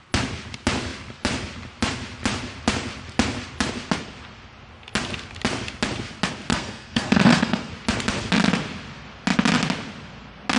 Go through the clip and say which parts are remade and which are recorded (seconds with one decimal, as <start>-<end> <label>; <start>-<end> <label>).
0.0-6.5 recorded; 6.5-7.7 remade; 7.7-10.6 recorded